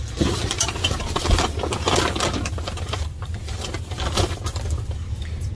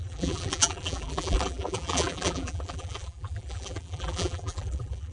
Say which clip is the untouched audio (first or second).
first